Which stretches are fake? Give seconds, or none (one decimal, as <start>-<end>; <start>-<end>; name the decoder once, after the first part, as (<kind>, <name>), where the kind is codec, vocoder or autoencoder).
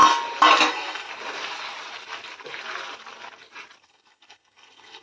0.7-1.1 (codec, SNAC); 3.8-5.0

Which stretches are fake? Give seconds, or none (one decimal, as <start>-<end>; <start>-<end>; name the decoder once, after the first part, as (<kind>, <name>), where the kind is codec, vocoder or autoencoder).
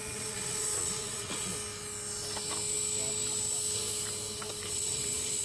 0.0-1.5 (vocoder, Vocos); 4.7-5.4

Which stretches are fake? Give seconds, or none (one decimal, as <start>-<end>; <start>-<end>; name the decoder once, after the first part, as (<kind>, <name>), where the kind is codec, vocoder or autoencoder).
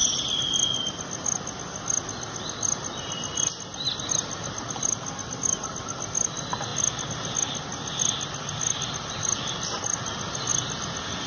none